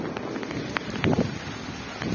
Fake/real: real